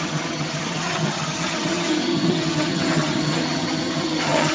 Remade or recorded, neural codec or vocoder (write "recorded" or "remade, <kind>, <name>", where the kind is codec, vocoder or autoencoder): remade, vocoder, HiFi-GAN